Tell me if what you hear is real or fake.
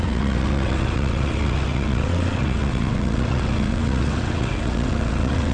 fake